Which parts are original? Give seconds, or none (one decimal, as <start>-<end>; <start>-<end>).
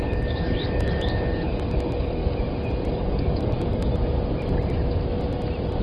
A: 2.2-2.9; 3.9-5.8